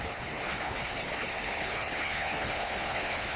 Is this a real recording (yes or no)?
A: no